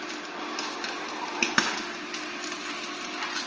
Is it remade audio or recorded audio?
recorded